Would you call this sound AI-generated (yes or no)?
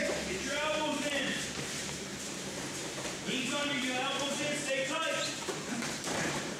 yes